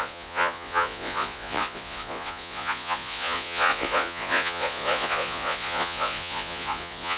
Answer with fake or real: fake